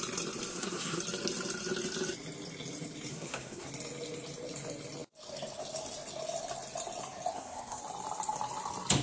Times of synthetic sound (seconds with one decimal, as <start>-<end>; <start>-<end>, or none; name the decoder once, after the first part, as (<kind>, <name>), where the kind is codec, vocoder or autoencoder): 0.5-1.0 (codec, SNAC); 3.1-3.7; 7.3-7.8